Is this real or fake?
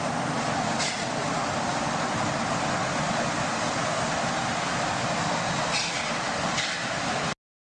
real